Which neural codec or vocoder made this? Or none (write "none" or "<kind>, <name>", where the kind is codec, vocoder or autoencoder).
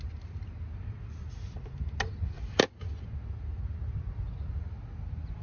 none